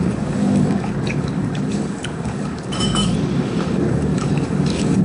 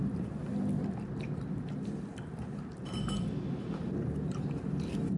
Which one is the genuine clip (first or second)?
second